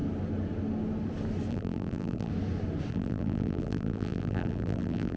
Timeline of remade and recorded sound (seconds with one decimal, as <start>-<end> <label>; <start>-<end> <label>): 0.0-1.5 recorded; 1.5-2.3 remade; 2.3-2.9 recorded; 2.9-5.2 remade